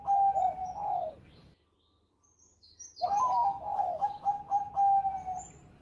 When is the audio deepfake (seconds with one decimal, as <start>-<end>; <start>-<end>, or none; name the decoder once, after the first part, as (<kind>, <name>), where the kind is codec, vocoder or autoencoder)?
0.6-1.1 (autoencoder, DAC-VAE); 3.4-4.7